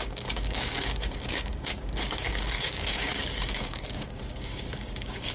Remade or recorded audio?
remade